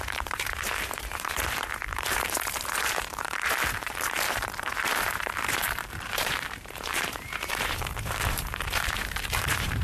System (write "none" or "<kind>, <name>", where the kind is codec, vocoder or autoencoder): vocoder, BigVGAN v2